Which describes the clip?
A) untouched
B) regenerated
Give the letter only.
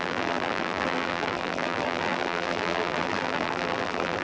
B